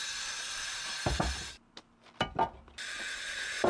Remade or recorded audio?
recorded